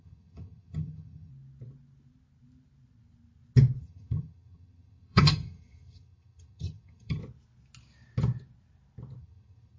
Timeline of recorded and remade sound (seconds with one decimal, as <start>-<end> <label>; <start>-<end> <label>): 0.0-1.3 remade; 1.3-3.8 recorded; 3.8-7.2 remade; 7.2-9.2 recorded; 9.2-9.8 remade